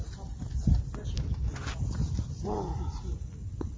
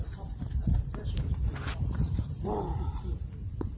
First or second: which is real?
first